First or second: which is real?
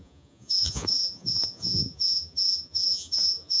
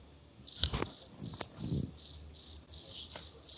second